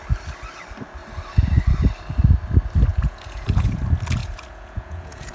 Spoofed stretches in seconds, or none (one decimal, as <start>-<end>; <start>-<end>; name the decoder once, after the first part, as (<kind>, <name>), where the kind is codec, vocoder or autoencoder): 2.9-3.8 (vocoder, Vocos); 4.2-5.3